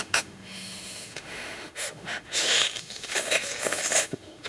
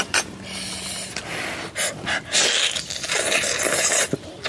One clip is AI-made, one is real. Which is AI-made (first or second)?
first